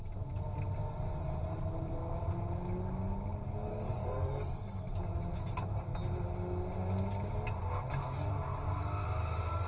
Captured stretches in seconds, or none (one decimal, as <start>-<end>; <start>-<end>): 0.0-3.7; 4.9-9.7